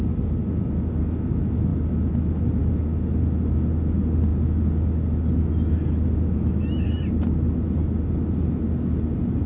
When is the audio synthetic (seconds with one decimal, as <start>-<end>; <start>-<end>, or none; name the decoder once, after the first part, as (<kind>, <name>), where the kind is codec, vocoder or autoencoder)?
none